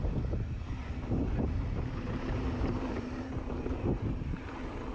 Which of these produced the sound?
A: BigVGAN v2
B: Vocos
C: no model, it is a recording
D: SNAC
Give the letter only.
C